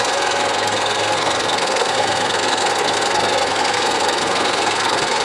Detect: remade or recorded remade